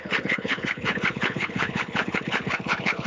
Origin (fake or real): fake